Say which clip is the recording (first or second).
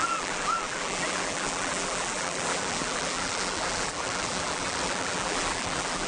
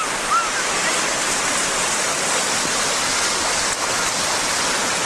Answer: second